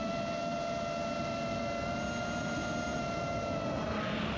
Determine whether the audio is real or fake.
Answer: real